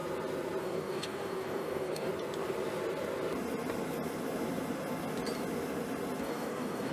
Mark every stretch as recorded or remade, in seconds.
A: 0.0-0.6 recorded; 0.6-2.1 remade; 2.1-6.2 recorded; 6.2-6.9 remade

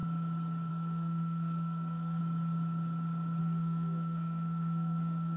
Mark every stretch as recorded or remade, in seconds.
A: 0.0-0.7 recorded; 0.7-2.2 remade; 2.2-3.4 recorded; 3.4-5.4 remade

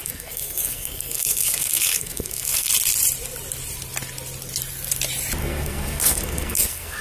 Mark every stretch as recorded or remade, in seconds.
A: 0.0-2.7 remade; 2.7-5.4 recorded; 5.4-7.0 remade

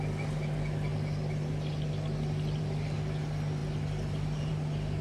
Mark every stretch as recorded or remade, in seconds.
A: 0.0-5.0 recorded